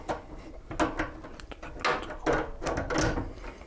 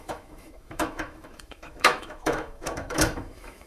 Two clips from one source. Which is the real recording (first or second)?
first